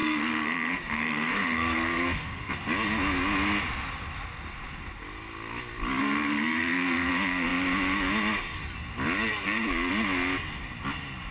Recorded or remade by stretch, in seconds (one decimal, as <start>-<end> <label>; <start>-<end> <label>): 0.0-2.5 remade; 2.5-6.0 recorded; 6.0-7.1 remade; 7.1-11.3 recorded